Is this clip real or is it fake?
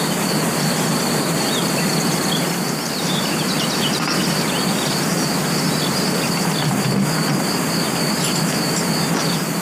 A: real